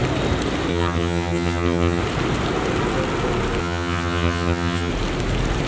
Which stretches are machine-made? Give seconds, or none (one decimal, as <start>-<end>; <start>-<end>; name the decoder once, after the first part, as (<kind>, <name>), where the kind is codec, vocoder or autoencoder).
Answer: 0.7-2.0 (vocoder, HiFi-GAN); 3.6-4.9